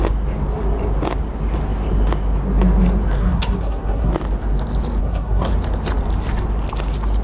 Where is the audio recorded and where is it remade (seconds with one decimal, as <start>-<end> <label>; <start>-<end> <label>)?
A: 0.0-3.2 recorded; 3.2-4.1 remade; 4.1-5.0 recorded; 5.0-5.5 remade; 5.5-7.2 recorded